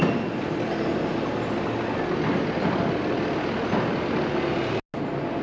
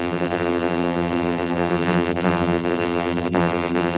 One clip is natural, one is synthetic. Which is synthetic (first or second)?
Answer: second